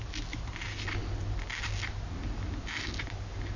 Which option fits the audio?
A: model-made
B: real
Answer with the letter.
B